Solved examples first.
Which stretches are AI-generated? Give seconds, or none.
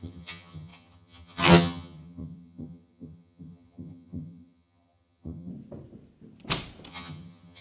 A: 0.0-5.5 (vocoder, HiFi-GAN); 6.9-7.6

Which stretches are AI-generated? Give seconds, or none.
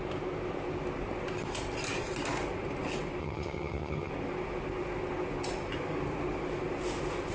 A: 3.2-4.1 (vocoder, HiFi-GAN)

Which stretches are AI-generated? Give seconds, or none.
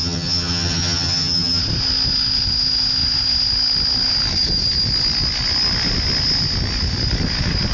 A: 0.0-1.6 (vocoder, HiFi-GAN)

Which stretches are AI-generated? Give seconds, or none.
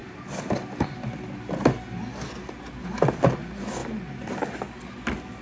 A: none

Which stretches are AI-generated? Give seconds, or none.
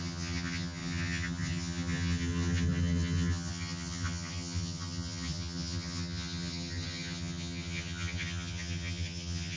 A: 0.0-9.6 (vocoder, HiFi-GAN)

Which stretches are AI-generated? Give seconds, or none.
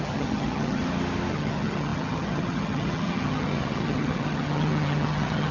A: 0.0-0.8 (vocoder, HiFi-GAN); 1.3-5.5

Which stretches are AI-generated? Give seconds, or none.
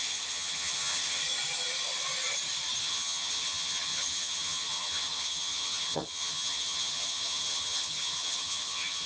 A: 0.0-1.2 (vocoder, HiFi-GAN); 2.8-9.1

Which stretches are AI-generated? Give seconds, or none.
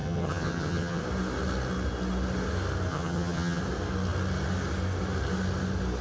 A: 0.0-1.0 (vocoder, HiFi-GAN); 2.9-3.6